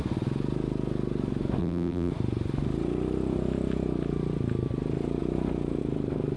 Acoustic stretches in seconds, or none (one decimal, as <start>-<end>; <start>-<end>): 0.0-1.6; 2.1-6.4

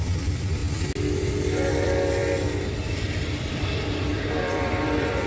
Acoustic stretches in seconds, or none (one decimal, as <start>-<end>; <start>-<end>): 0.6-1.7; 2.2-3.4

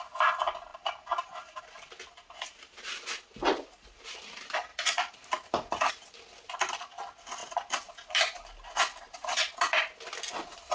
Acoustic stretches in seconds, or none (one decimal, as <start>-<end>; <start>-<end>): 0.0-0.7; 1.6-4.7; 5.9-10.7

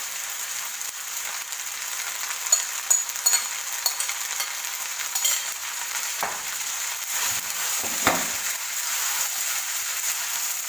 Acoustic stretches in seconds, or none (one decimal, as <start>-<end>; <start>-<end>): 1.4-4.8

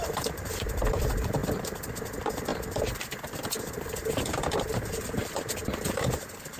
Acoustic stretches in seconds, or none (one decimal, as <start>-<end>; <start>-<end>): none

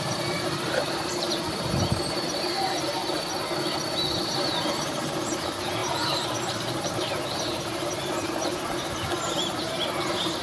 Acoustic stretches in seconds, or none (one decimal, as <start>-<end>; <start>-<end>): 3.0-4.2

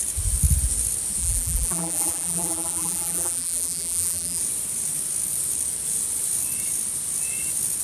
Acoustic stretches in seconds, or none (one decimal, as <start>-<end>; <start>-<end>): 0.0-1.2; 4.4-7.8

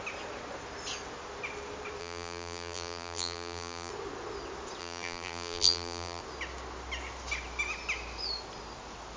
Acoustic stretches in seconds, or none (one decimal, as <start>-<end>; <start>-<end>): 0.0-2.0; 3.9-4.8; 6.2-9.2